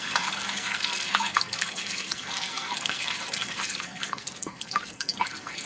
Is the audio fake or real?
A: fake